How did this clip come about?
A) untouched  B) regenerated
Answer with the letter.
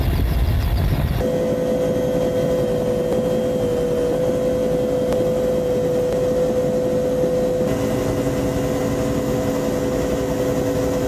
A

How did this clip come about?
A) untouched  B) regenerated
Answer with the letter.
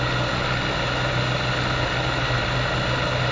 A